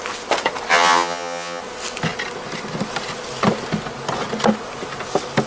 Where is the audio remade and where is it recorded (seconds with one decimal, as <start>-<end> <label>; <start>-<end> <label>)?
0.0-0.7 recorded; 0.7-1.6 remade; 1.6-5.5 recorded